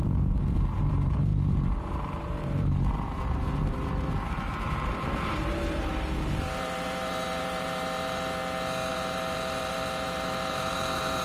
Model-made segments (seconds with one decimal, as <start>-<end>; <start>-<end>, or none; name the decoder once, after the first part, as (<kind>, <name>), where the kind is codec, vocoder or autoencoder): 0.0-8.4 (vocoder, BigVGAN v2); 8.9-11.2